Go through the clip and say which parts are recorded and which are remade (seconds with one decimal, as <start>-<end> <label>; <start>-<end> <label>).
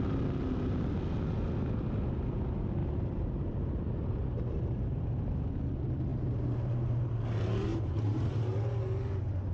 0.0-2.8 recorded; 2.8-5.1 remade; 5.1-6.1 recorded; 6.1-7.1 remade; 7.1-7.7 recorded; 7.7-8.4 remade; 8.4-9.5 recorded